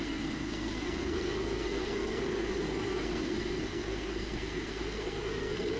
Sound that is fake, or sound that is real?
fake